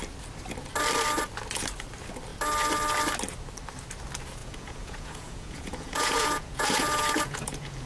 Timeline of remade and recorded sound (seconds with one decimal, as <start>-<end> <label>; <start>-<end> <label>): 0.0-4.4 recorded; 4.4-7.9 remade